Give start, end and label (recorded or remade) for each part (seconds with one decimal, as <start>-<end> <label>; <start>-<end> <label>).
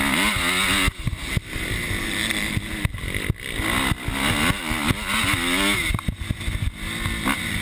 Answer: 0.0-7.6 recorded